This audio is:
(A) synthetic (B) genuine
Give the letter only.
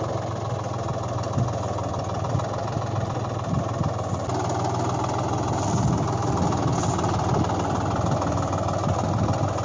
B